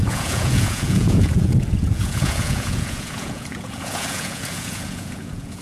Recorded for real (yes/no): no